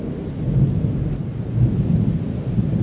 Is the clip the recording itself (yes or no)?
yes